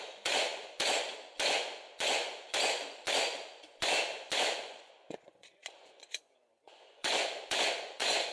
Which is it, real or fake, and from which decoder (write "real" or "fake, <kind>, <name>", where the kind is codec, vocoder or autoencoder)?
fake, vocoder, Vocos